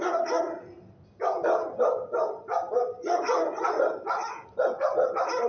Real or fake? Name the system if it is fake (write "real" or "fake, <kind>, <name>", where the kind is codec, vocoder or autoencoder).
real